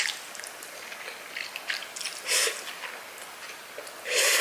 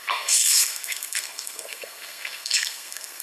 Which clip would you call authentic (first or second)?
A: first